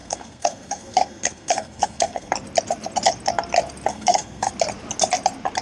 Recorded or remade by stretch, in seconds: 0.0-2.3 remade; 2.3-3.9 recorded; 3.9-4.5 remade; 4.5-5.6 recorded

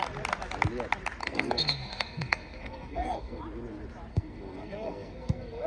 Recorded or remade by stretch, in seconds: 0.0-1.2 recorded; 1.2-3.4 remade; 3.4-4.1 recorded; 4.1-5.7 remade

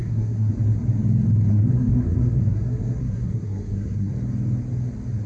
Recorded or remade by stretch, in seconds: 0.0-0.5 remade; 0.5-1.5 recorded; 1.5-4.1 remade; 4.1-5.3 recorded

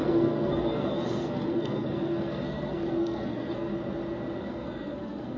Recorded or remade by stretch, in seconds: 0.0-3.7 remade; 3.7-4.4 recorded; 4.4-5.4 remade

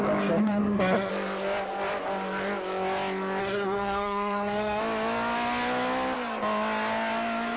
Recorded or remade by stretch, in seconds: 0.0-0.4 recorded; 0.4-1.1 remade; 1.1-3.4 recorded; 3.4-4.8 remade; 4.8-7.6 recorded

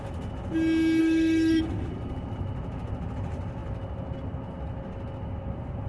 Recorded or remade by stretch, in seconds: 0.0-1.0 recorded; 1.0-1.6 remade; 1.6-5.9 recorded

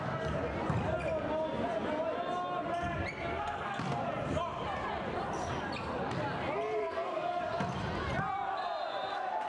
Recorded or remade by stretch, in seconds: 0.0-3.3 recorded; 3.3-3.8 remade; 3.8-6.8 recorded; 6.8-7.4 remade; 7.4-9.5 recorded

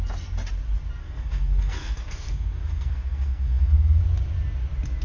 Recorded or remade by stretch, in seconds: 0.0-1.0 recorded; 1.0-4.0 remade; 4.0-5.0 recorded